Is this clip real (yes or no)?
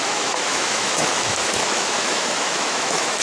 no